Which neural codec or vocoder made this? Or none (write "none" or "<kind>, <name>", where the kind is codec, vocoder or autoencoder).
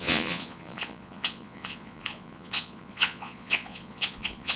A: vocoder, Vocos